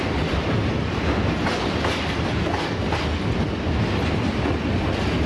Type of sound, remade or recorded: recorded